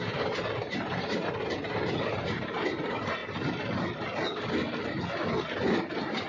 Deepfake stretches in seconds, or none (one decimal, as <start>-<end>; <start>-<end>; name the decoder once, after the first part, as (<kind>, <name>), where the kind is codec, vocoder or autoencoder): 0.0-3.2 (vocoder, BigVGAN v2); 5.6-6.3